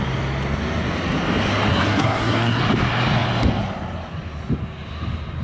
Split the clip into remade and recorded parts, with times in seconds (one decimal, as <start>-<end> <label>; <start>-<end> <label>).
0.0-1.7 recorded; 1.7-2.6 remade; 2.6-5.4 recorded